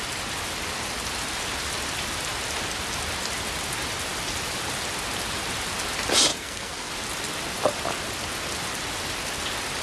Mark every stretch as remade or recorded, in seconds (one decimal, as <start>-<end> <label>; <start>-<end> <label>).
0.0-6.3 recorded; 6.3-6.9 remade; 6.9-9.8 recorded